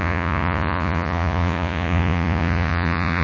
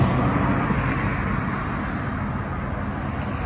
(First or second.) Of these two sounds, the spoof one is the first